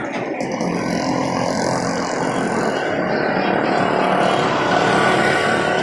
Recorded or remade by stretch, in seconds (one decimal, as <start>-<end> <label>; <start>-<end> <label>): 0.0-5.8 recorded